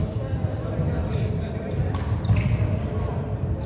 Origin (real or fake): real